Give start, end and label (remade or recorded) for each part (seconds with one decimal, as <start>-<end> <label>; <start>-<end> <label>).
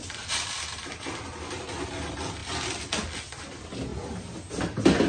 0.0-5.1 recorded